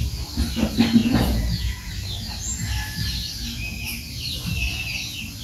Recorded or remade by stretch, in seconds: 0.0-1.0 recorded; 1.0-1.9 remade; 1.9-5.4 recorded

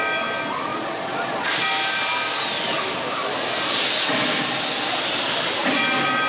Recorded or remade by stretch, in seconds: 0.0-0.7 recorded; 0.7-1.5 remade; 1.5-6.3 recorded

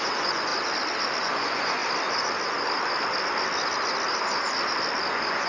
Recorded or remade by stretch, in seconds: 0.0-0.5 remade; 0.5-1.2 recorded; 1.2-1.8 remade; 1.8-5.1 recorded; 5.1-5.5 remade